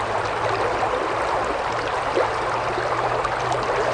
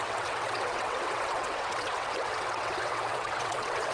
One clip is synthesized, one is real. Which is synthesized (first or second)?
second